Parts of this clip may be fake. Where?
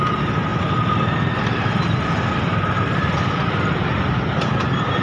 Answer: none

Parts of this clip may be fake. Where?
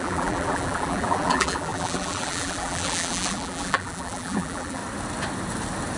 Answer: 0.0-4.8 (vocoder, BigVGAN v2)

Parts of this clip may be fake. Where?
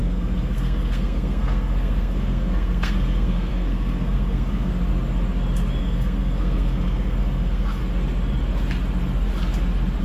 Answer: 0.0-4.7 (codec, SNAC); 5.8-7.8